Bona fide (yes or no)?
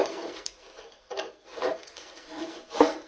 no